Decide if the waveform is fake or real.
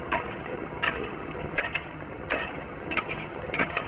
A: fake